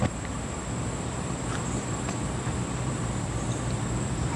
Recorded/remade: remade